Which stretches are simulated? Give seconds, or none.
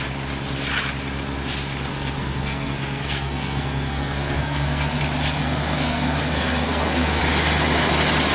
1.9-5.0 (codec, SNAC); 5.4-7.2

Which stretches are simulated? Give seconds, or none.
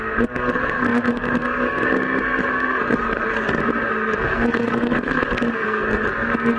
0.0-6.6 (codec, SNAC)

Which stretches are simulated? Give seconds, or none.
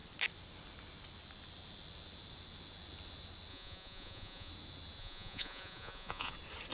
3.5-4.5 (vocoder, Vocos); 5.0-6.3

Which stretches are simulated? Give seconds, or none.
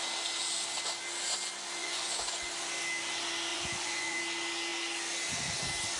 1.8-2.5 (vocoder, Vocos); 3.5-4.2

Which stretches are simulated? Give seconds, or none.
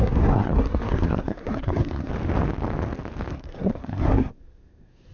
0.0-2.1 (codec, SNAC); 3.3-5.1